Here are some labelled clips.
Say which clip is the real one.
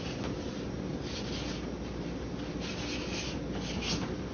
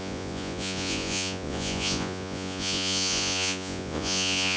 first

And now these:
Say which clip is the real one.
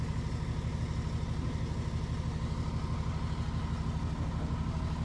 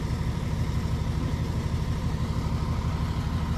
first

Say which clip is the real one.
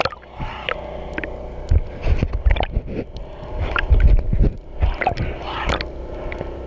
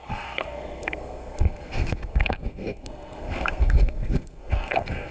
first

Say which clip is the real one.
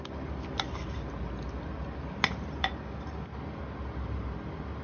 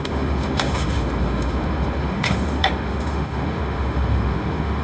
first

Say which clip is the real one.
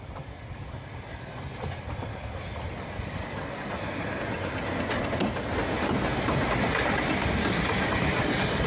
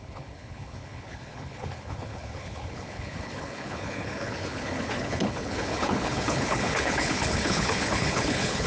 first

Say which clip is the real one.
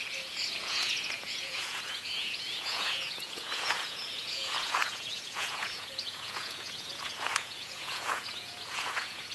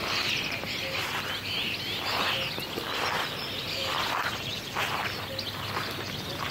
second